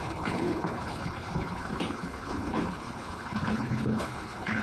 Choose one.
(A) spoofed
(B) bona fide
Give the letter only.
A